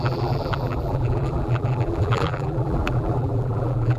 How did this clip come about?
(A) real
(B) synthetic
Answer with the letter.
B